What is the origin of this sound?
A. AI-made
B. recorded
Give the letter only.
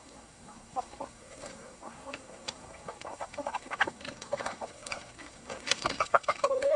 A